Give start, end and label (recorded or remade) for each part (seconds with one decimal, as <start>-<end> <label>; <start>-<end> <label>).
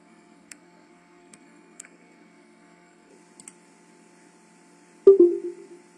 0.0-3.1 remade; 3.1-6.0 recorded